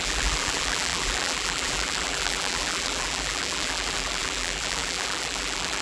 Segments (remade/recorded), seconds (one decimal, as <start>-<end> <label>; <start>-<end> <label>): 0.0-5.8 remade